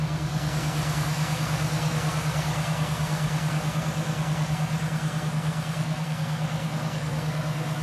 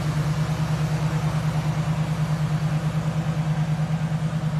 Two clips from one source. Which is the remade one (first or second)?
first